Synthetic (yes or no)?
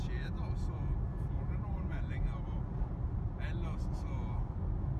no